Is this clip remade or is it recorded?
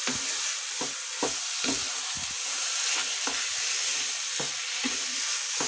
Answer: recorded